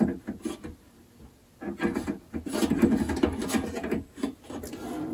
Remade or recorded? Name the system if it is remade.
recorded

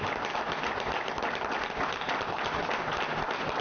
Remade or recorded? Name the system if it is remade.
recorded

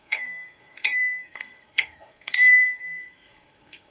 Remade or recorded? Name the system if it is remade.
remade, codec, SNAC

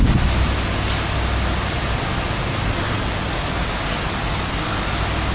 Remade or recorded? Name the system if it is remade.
recorded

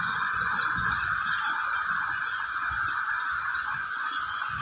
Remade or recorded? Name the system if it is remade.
remade, vocoder, Vocos